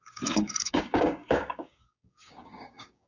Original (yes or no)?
no